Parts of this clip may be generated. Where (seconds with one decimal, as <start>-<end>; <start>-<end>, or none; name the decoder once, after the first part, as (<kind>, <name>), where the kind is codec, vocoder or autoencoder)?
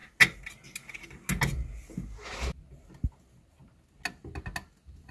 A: none